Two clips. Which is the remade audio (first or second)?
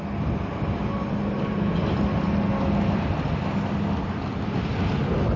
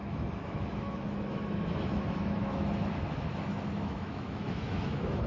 second